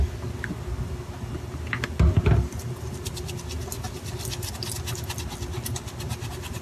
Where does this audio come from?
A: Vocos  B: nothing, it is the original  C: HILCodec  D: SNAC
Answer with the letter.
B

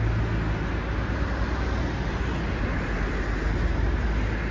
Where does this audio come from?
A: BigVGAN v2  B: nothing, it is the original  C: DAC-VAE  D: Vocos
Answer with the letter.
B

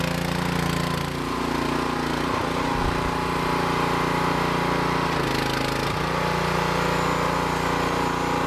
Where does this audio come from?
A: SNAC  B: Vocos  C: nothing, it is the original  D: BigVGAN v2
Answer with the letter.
C